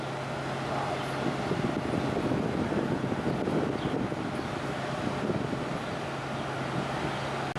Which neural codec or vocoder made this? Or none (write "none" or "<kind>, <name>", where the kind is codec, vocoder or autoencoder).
none